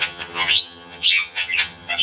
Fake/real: fake